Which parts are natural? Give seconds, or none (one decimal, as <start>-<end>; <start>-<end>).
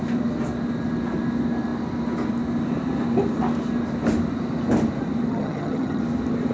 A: 0.0-5.3; 6.0-6.5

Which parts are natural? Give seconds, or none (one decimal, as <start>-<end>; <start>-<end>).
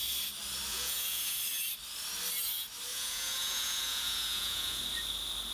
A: 0.0-0.7; 1.4-2.9; 4.8-5.5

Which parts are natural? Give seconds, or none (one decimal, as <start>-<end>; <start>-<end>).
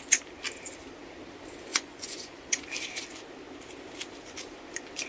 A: 0.0-1.7; 2.6-5.1